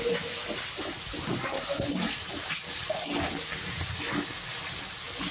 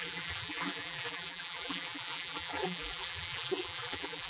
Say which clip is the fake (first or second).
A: second